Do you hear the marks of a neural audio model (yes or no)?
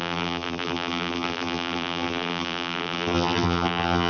yes